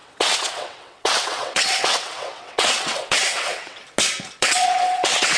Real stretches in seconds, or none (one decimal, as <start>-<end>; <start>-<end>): 3.8-4.4